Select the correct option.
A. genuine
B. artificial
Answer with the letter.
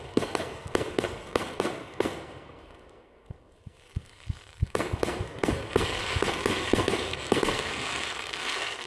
B